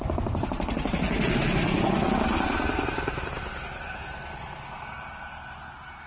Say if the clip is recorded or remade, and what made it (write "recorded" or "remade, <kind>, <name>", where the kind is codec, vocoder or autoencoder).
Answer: recorded